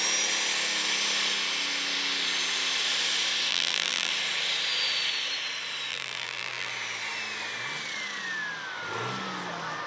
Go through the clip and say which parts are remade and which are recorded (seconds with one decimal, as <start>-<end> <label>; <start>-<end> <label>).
0.0-3.5 recorded; 3.5-4.1 remade; 4.1-5.9 recorded; 5.9-6.7 remade; 6.7-9.9 recorded